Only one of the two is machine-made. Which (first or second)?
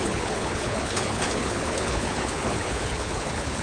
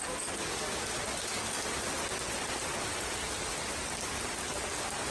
first